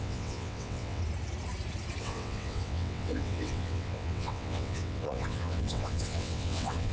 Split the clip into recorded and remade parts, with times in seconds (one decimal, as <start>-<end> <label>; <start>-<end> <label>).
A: 0.0-1.0 remade; 1.0-2.0 recorded; 2.0-6.9 remade